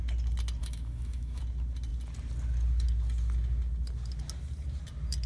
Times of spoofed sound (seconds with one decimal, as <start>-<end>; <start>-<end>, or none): 0.6-1.4